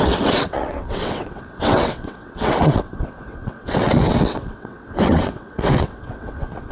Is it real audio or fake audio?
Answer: fake